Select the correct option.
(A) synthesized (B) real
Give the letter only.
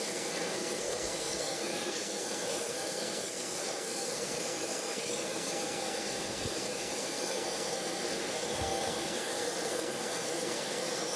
A